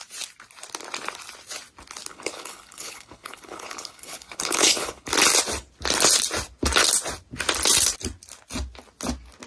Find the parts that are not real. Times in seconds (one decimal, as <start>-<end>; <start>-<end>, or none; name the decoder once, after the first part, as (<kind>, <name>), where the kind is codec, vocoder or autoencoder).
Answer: 2.1-5.1 (codec, HILCodec)